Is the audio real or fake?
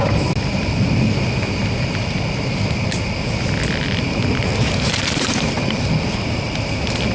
real